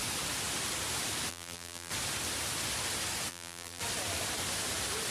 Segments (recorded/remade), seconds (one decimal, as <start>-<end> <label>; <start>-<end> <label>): 0.0-1.3 recorded; 1.3-1.9 remade; 1.9-3.3 recorded; 3.3-3.8 remade; 3.8-5.1 recorded